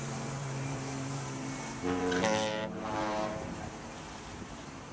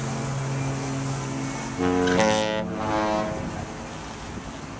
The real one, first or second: second